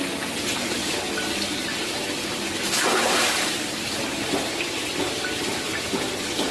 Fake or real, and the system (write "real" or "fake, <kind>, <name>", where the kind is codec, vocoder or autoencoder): real